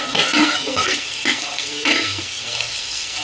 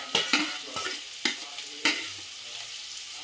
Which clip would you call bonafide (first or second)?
second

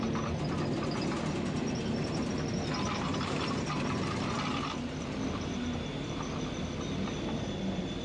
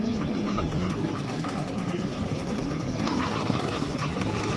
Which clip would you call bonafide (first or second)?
first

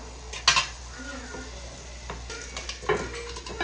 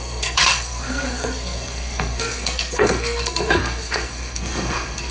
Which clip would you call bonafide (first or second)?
first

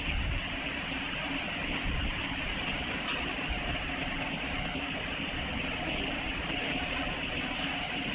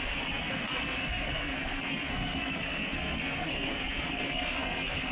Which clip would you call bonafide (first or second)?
first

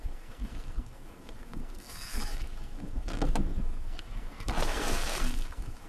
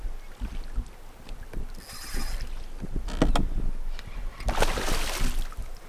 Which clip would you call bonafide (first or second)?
second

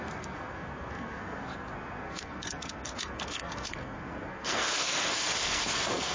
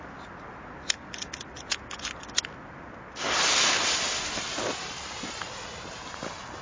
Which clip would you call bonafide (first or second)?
second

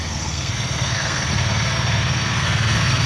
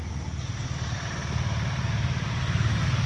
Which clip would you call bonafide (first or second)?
second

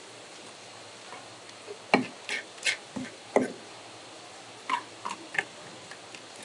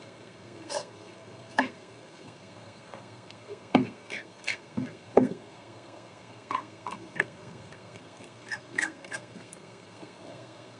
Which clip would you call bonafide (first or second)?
first